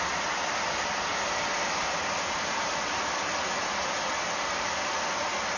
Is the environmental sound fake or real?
real